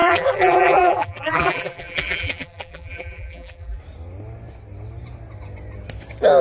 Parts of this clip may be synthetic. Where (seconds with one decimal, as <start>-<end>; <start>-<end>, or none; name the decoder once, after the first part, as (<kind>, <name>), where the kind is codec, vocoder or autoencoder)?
0.0-3.8 (vocoder, BigVGAN v2)